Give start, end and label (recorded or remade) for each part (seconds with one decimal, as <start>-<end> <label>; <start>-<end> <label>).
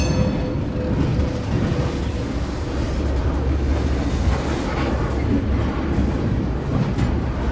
0.0-7.5 recorded